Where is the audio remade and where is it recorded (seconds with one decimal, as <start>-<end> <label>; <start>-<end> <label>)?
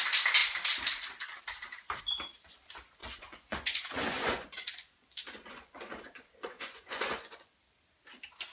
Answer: 0.0-3.0 recorded; 3.0-7.5 remade; 7.5-8.5 recorded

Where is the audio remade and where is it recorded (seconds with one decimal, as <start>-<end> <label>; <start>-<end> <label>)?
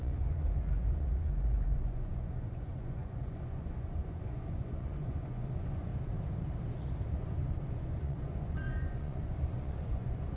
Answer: 0.0-5.9 remade; 5.9-7.1 recorded; 7.1-10.4 remade